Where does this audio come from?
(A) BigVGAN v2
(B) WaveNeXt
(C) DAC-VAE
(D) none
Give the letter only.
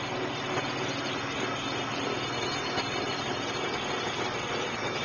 A